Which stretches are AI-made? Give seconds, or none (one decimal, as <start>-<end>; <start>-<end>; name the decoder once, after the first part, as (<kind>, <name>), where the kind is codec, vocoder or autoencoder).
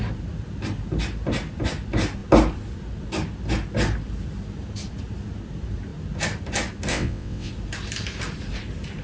6.9-7.5 (vocoder, WaveNeXt)